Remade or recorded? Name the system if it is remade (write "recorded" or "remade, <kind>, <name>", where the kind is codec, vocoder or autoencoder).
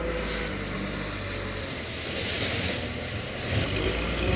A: recorded